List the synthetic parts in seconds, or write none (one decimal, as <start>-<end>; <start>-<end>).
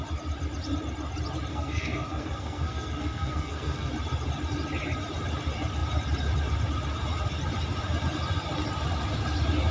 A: 1.5-3.9